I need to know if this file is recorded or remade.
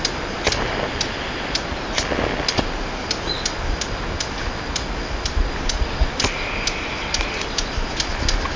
recorded